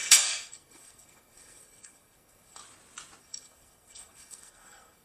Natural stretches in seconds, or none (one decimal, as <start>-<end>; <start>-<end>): 2.6-3.2